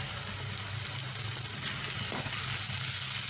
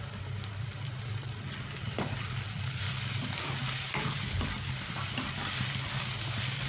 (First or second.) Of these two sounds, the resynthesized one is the second